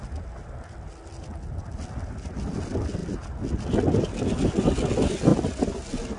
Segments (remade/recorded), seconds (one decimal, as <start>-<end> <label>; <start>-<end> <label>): 0.0-6.2 recorded